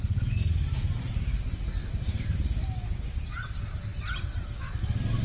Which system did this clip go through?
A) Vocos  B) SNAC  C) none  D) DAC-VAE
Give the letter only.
C